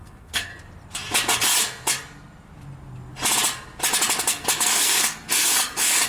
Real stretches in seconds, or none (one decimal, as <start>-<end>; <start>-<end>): 0.5-4.2